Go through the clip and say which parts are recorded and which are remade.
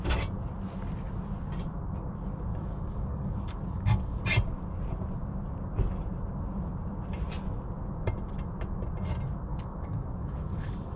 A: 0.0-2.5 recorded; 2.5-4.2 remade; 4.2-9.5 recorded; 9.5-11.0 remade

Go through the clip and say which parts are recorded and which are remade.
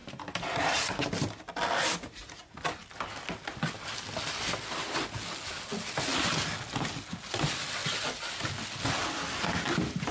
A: 0.0-10.1 recorded